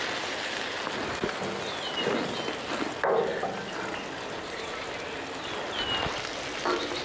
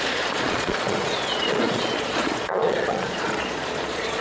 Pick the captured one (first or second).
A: first